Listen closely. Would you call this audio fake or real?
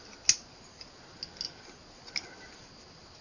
real